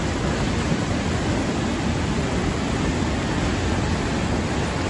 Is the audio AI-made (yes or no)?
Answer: no